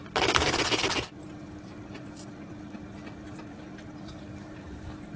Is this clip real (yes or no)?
yes